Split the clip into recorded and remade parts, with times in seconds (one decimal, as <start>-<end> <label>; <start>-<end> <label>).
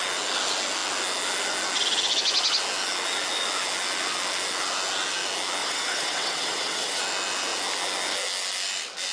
0.0-5.6 recorded; 5.6-7.0 remade; 7.0-9.1 recorded